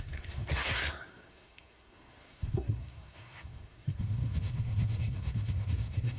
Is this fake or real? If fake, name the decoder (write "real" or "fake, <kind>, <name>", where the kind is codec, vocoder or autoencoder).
fake, codec, SNAC